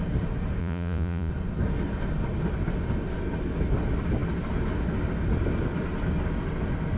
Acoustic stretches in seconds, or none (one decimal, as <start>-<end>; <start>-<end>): 0.0-0.6; 1.3-7.0